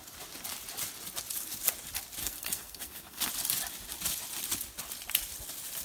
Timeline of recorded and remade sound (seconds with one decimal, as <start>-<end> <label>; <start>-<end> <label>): 0.0-2.2 recorded; 2.2-3.3 remade; 3.3-5.8 recorded